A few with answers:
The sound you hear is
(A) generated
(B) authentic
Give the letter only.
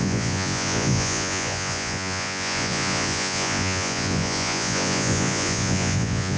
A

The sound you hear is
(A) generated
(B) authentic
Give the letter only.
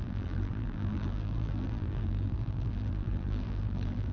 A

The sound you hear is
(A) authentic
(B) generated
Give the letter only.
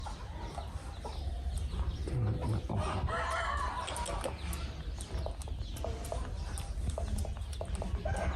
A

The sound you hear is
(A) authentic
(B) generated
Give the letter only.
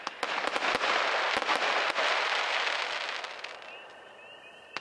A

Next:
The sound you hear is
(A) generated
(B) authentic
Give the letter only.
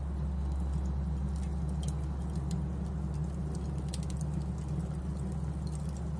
B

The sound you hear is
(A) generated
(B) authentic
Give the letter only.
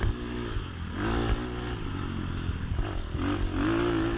B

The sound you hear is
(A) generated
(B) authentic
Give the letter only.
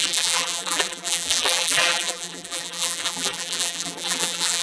A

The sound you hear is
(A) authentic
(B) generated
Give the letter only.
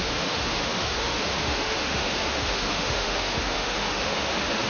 B